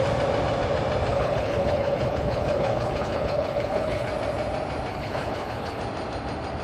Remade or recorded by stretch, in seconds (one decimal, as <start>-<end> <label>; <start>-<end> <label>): 0.0-1.1 recorded; 1.1-4.1 remade; 4.1-4.9 recorded; 4.9-5.8 remade; 5.8-6.6 recorded